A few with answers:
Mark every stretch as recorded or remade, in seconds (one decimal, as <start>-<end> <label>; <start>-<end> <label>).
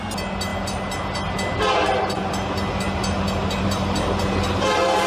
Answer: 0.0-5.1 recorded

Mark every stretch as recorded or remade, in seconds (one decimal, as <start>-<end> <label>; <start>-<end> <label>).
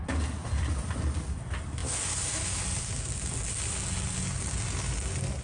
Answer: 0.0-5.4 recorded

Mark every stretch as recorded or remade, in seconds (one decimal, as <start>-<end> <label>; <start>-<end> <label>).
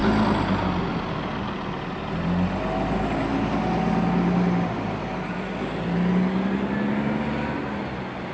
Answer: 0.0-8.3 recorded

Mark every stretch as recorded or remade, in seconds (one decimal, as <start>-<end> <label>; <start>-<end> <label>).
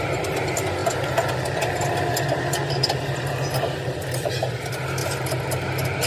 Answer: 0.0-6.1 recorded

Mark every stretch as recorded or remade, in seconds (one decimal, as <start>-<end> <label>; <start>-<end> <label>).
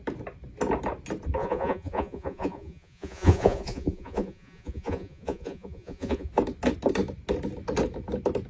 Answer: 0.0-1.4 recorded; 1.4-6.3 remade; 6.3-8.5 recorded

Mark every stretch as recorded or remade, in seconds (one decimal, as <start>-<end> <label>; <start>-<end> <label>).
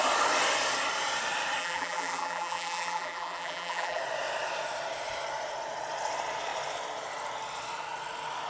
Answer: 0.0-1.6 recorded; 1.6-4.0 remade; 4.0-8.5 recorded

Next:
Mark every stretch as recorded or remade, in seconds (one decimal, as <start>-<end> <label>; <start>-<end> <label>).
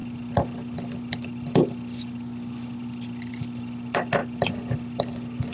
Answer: 0.0-5.5 recorded